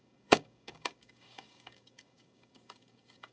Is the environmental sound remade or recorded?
remade